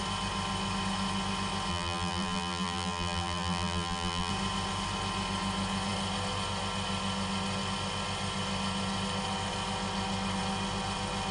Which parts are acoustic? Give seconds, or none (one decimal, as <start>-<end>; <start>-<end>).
0.0-1.7; 4.3-11.3

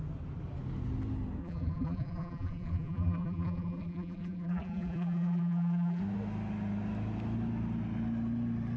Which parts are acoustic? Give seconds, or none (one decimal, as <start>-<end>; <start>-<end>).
0.0-1.4; 6.0-8.8

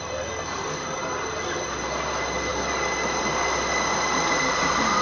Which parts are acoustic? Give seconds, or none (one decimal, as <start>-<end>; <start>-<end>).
0.0-5.0

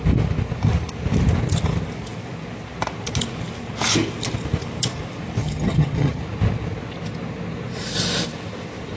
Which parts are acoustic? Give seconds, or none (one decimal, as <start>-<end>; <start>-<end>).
0.0-5.4; 6.2-9.0

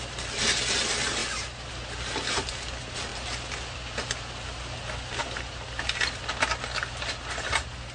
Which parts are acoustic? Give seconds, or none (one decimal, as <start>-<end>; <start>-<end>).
0.0-7.9